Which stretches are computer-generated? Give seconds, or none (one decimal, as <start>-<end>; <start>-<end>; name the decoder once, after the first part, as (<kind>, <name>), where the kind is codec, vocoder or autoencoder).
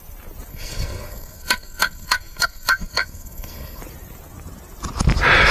0.5-3.8 (codec, SNAC)